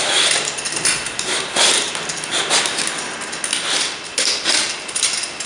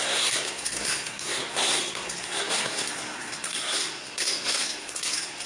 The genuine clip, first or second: first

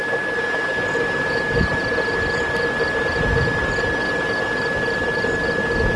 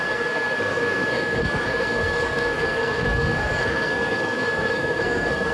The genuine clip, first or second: first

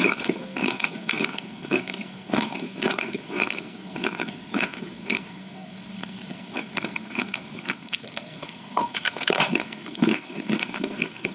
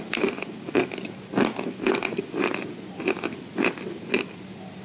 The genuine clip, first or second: second